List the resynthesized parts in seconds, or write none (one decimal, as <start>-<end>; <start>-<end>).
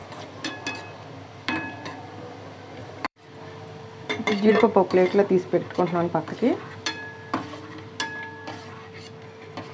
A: 0.0-0.5; 2.8-4.5